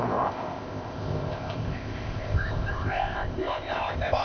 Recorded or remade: remade